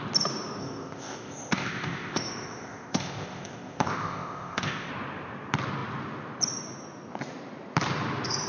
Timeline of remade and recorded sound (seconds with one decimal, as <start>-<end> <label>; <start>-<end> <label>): 0.0-0.6 recorded; 0.6-4.9 remade; 4.9-8.5 recorded